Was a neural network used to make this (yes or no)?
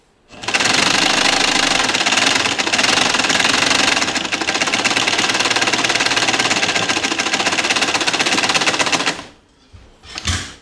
no